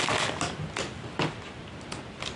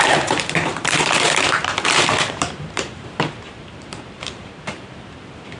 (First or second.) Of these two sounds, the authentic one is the first